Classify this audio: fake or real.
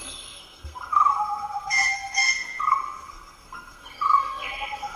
fake